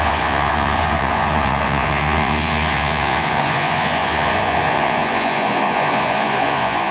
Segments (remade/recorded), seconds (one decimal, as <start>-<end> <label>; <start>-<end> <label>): 0.0-6.9 remade

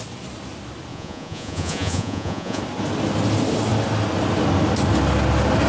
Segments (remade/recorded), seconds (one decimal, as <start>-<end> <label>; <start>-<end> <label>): 0.0-0.9 recorded; 0.9-2.6 remade; 2.6-5.7 recorded

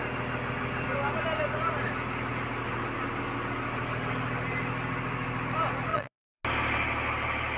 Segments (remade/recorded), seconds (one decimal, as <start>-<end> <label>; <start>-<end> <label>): 0.0-5.9 recorded; 5.9-6.4 remade; 6.4-7.6 recorded

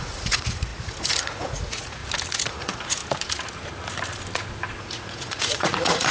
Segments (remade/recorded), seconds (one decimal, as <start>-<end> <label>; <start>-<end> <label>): 0.0-2.0 remade; 2.0-2.5 recorded; 2.5-3.0 remade; 3.0-4.8 recorded; 4.8-6.1 remade

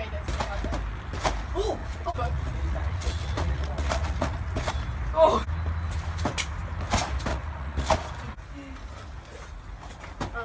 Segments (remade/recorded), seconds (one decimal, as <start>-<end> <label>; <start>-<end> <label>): 0.0-1.8 recorded; 1.8-4.7 remade; 4.7-7.3 recorded; 7.3-8.1 remade; 8.1-10.4 recorded

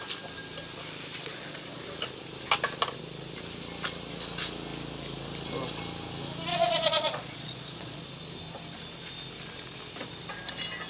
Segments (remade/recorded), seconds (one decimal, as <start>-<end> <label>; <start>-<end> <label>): 0.0-1.2 recorded; 1.2-1.8 remade; 1.8-6.5 recorded; 6.5-8.0 remade; 8.0-10.9 recorded

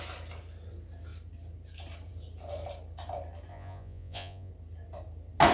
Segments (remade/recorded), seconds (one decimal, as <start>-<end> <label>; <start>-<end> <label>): 0.0-3.5 recorded; 3.5-4.5 remade; 4.5-5.5 recorded

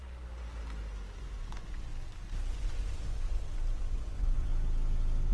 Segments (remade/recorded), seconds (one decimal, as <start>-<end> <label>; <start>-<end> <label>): 0.0-1.2 recorded; 1.2-1.9 remade; 1.9-2.5 recorded; 2.5-4.5 remade; 4.5-5.3 recorded